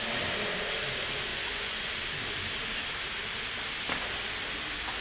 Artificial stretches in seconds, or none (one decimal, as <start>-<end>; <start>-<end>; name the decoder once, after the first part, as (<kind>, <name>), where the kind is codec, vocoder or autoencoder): 1.3-1.9 (vocoder, Vocos)